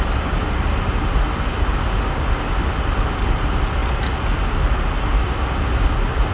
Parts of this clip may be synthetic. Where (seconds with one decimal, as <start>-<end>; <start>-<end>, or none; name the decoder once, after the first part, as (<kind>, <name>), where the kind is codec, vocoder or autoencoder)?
none